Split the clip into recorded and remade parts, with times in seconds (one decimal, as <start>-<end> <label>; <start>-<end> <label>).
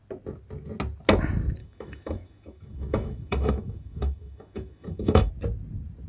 0.0-1.6 recorded; 1.6-5.3 remade; 5.3-6.1 recorded